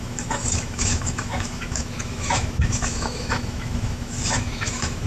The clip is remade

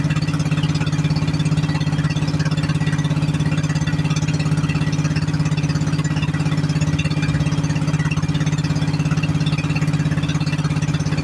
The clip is recorded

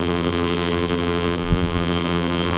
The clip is remade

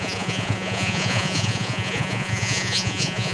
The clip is remade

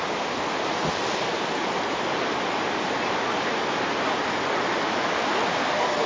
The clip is recorded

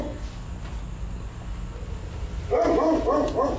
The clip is recorded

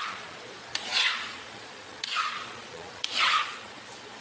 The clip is remade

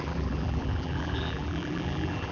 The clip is remade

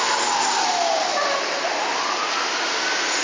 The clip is recorded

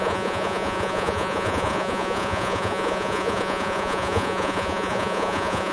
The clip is remade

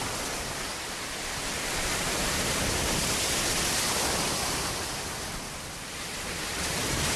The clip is recorded